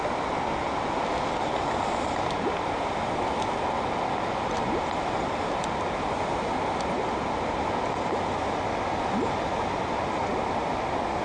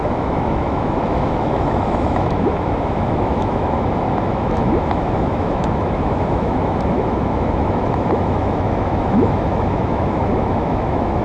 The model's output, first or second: second